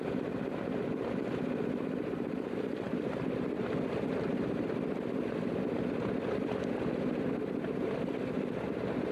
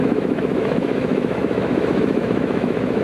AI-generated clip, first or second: second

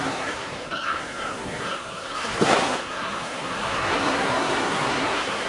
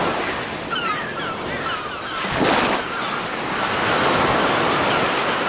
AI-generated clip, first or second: first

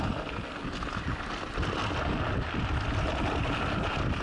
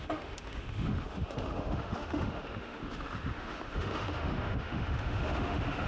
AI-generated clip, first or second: second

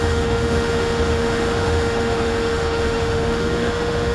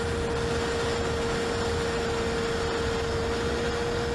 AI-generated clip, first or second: first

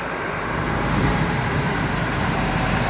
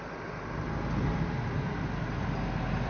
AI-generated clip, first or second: first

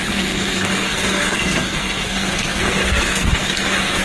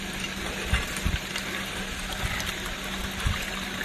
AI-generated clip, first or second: first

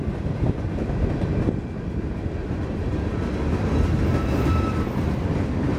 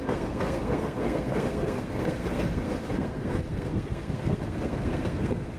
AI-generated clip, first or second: second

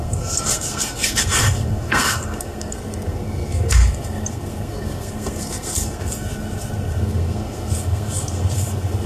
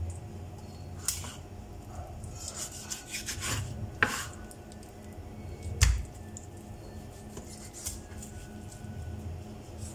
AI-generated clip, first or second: first